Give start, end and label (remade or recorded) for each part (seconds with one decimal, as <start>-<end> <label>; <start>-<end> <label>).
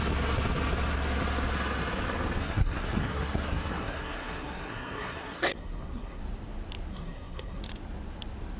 0.0-2.4 recorded; 2.4-6.2 remade; 6.2-6.9 recorded; 6.9-7.6 remade; 7.6-8.6 recorded